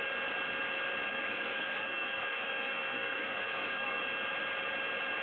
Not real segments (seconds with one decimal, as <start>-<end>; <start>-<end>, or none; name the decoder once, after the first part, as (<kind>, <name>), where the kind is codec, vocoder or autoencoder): 1.1-4.0 (codec, SNAC)